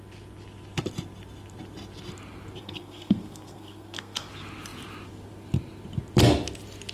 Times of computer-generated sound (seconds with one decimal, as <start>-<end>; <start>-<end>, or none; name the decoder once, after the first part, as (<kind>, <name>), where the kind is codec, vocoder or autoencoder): 2.6-4.3 (codec, SNAC)